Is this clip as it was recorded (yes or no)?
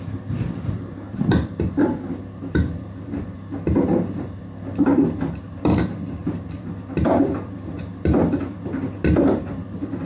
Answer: no